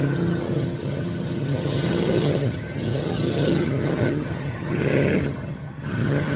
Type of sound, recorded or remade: remade